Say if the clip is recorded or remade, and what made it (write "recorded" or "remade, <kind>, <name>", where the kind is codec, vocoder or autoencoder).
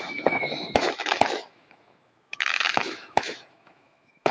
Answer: remade, autoencoder, DAC-VAE